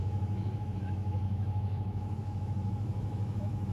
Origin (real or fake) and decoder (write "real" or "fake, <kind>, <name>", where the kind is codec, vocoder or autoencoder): fake, autoencoder, DAC-VAE